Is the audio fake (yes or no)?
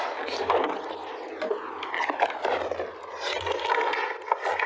no